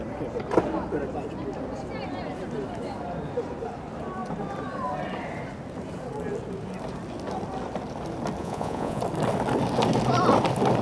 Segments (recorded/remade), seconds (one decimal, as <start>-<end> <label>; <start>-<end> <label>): 0.0-8.4 recorded; 8.4-9.0 remade; 9.0-10.8 recorded